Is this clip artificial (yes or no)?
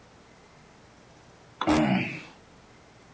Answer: no